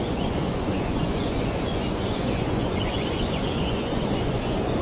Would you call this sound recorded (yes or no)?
no